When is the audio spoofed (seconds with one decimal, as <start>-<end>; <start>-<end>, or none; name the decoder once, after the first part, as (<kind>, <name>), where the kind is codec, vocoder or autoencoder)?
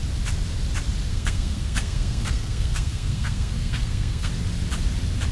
1.1-4.3 (codec, SNAC)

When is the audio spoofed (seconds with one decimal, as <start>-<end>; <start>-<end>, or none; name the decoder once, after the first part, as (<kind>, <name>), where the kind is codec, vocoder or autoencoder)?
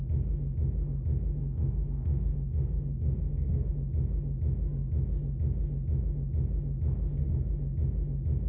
1.4-3.7 (codec, SNAC)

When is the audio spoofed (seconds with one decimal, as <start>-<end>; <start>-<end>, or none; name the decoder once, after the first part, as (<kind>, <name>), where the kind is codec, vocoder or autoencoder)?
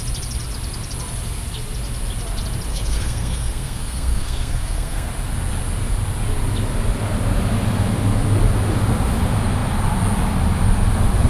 2.7-5.1 (codec, SNAC)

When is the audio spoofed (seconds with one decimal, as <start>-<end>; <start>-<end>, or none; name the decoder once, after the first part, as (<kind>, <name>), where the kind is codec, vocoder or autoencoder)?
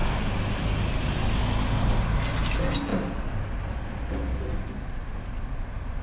none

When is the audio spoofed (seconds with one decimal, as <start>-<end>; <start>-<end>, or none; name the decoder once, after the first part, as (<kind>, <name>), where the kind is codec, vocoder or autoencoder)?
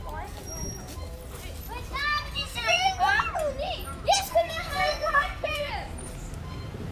2.0-3.0 (codec, SNAC); 4.3-5.7